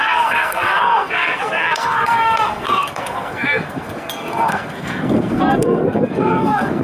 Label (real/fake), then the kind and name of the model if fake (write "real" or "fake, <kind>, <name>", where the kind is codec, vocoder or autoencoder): fake, codec, SNAC